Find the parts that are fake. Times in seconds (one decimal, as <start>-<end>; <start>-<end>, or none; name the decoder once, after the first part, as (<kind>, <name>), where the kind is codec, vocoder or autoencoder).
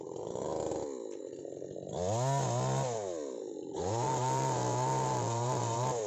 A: 0.0-0.5 (vocoder, BigVGAN v2); 3.4-6.1